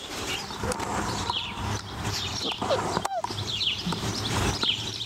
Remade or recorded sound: remade